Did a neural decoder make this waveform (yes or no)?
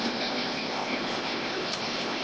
yes